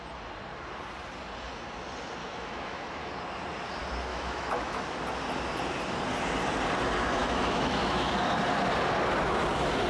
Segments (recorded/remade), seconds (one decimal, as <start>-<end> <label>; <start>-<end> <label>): 0.0-2.2 recorded; 2.2-3.1 remade; 3.1-4.1 recorded; 4.1-4.8 remade; 4.8-7.2 recorded; 7.2-8.1 remade; 8.1-9.9 recorded